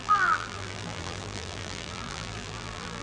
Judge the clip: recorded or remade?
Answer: remade